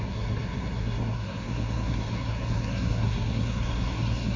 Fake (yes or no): yes